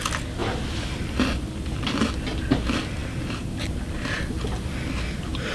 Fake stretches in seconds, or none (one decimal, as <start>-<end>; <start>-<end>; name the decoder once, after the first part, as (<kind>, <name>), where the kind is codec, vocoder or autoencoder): none